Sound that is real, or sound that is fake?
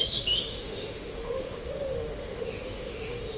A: fake